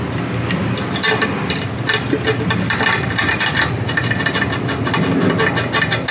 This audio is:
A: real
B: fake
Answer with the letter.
A